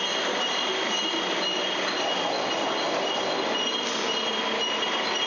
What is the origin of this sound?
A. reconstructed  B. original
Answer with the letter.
B